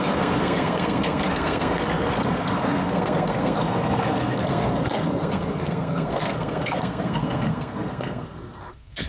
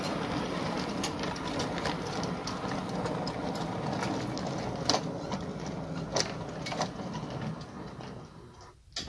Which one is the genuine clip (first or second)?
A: second